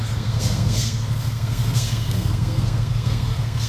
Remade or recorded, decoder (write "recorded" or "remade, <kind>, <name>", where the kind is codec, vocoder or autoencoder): remade, codec, SNAC